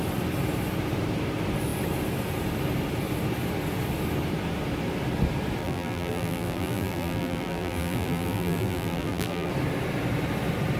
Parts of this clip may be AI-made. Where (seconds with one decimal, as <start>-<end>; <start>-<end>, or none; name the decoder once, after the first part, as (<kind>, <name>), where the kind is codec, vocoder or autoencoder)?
5.6-9.5 (vocoder, BigVGAN v2)